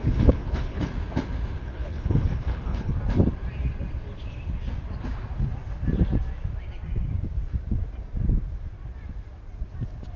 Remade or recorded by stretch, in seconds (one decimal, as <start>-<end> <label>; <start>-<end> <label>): 0.0-0.8 remade; 0.8-1.6 recorded; 1.6-3.0 remade; 3.0-10.2 recorded

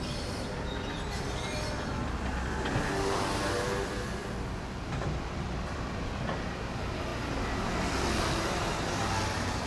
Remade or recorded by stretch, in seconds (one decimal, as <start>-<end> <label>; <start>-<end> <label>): 0.0-7.1 remade; 7.1-7.8 recorded; 7.8-9.7 remade

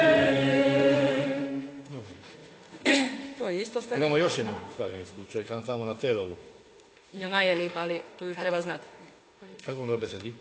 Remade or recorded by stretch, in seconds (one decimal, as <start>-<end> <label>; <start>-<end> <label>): 0.0-10.4 remade

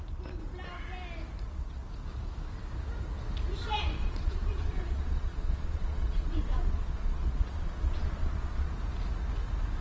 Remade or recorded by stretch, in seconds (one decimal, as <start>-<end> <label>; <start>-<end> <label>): 0.0-3.7 recorded; 3.7-8.7 remade; 8.7-9.8 recorded